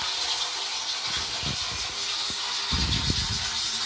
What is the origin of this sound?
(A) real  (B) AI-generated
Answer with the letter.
A